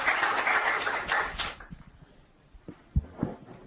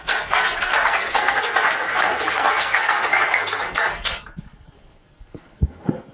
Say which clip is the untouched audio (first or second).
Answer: first